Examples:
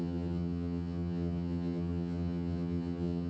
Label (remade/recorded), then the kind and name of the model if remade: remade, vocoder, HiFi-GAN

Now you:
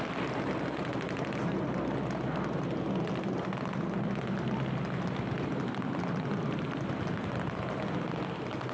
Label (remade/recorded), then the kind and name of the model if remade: recorded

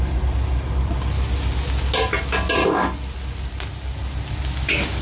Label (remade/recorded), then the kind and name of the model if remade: recorded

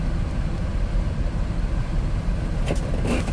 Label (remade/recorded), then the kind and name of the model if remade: remade, vocoder, BigVGAN v2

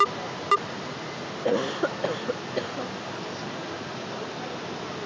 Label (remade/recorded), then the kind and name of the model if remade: recorded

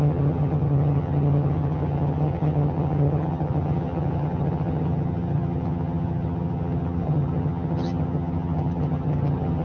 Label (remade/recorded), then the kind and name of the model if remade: remade, vocoder, HiFi-GAN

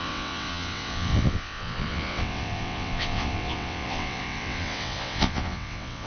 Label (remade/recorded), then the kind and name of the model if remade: remade, vocoder, WaveNeXt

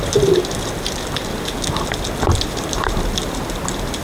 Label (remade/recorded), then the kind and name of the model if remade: remade, vocoder, BigVGAN v2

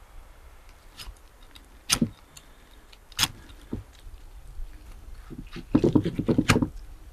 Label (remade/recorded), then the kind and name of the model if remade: recorded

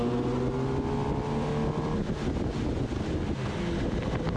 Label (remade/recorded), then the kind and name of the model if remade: recorded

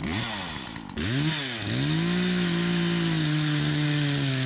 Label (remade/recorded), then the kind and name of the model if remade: recorded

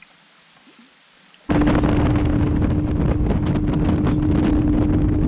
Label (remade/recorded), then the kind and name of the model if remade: recorded